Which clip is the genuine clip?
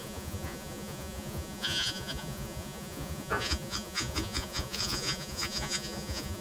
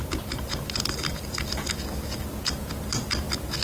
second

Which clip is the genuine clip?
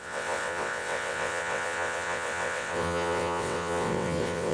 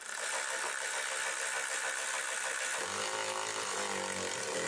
second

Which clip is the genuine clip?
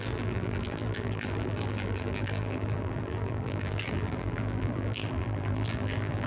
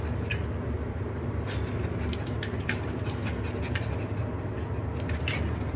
second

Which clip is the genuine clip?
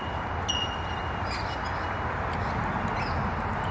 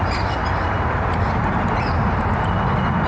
first